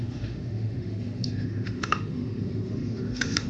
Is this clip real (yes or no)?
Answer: no